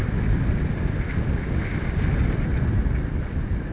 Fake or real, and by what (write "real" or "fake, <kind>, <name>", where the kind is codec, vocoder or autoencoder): real